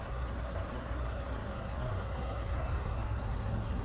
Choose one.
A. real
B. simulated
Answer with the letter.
B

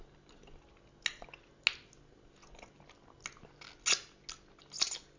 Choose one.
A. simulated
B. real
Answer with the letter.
B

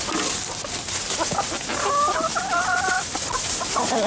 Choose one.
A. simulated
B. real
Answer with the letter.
B